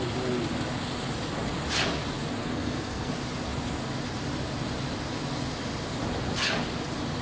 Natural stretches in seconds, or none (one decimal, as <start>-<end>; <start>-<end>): 0.0-2.4; 3.1-7.2